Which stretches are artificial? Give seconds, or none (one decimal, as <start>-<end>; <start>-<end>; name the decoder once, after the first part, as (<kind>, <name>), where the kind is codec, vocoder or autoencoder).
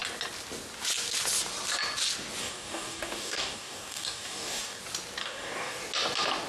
2.4-4.8 (codec, DAC); 5.2-5.8